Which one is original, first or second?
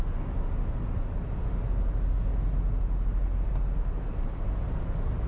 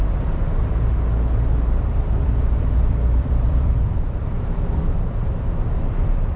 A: first